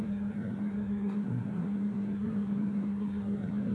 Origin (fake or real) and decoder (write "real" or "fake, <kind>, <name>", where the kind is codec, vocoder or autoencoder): fake, codec, SNAC